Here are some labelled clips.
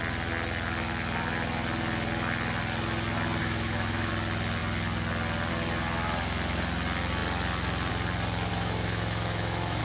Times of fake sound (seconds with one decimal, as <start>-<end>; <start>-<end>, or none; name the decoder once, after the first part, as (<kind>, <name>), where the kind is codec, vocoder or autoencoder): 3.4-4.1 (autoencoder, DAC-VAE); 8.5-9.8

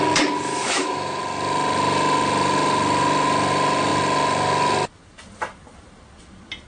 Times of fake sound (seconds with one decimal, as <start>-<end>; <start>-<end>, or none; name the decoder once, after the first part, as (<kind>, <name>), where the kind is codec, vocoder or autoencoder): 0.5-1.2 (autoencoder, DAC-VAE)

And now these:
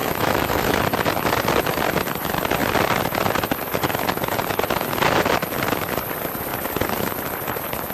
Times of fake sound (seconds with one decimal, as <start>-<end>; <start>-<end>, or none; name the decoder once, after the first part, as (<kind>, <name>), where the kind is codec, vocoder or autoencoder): 0.0-0.8 (autoencoder, DAC-VAE)

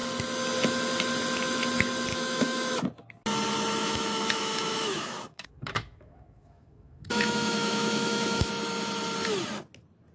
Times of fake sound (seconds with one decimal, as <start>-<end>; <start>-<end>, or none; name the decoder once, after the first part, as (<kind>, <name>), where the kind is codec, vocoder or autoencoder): 2.1-2.7 (autoencoder, DAC-VAE); 3.8-8.5

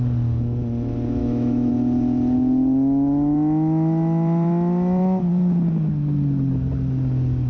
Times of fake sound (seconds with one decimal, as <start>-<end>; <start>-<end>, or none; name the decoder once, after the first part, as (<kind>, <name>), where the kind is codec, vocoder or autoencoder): 1.2-1.7 (autoencoder, DAC-VAE)